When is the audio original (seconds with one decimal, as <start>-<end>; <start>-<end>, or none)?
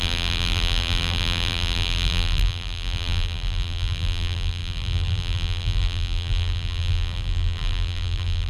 none